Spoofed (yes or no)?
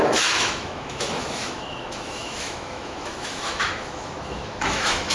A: yes